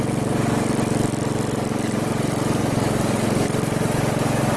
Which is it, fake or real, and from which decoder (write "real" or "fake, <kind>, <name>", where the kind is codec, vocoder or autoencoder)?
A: real